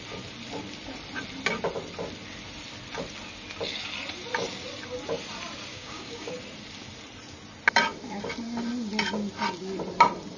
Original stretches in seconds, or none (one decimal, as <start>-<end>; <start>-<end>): 0.0-5.7; 6.3-10.4